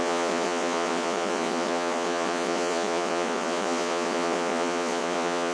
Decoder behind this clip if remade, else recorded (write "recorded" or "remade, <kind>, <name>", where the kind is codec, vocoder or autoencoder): remade, vocoder, Vocos